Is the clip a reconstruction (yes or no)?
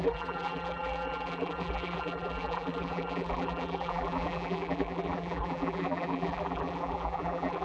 yes